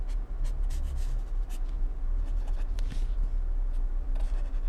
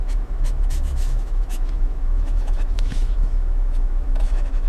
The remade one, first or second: second